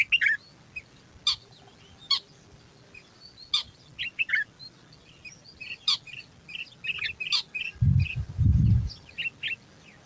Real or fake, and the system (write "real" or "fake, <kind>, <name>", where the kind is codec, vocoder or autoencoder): real